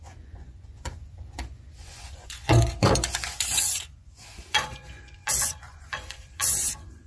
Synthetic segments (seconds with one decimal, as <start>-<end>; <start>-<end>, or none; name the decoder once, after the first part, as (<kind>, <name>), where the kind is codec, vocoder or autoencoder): 0.0-7.1 (vocoder, Vocos)